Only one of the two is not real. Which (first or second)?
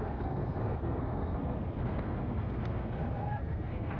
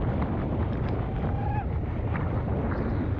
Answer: first